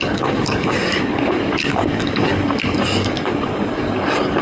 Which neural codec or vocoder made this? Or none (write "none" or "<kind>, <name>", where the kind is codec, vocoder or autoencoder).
codec, DAC